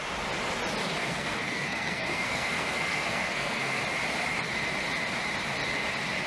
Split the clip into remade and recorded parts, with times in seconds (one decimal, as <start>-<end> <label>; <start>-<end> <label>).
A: 0.0-1.0 recorded; 1.0-3.8 remade; 3.8-6.3 recorded